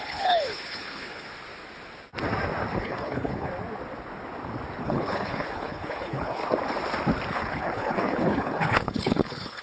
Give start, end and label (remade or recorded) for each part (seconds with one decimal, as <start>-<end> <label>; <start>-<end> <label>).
0.0-1.3 remade; 1.3-2.8 recorded; 2.8-3.5 remade; 3.5-4.8 recorded; 4.8-6.4 remade; 6.4-7.3 recorded; 7.3-9.6 remade